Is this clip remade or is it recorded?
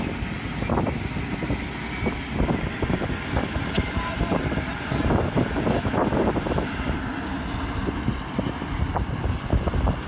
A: remade